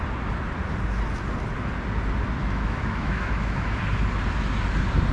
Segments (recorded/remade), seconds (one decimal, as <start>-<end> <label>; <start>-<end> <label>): 0.0-2.4 recorded; 2.4-3.8 remade; 3.8-5.1 recorded